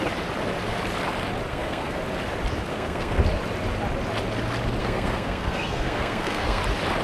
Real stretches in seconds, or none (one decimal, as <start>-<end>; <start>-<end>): 0.0-1.5; 2.0-2.7; 3.2-4.8; 6.6-7.0